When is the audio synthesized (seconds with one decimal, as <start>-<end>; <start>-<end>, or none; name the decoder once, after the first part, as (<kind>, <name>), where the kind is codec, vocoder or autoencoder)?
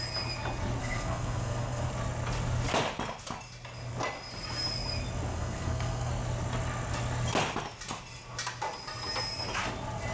0.8-1.9 (codec, SNAC); 5.3-6.1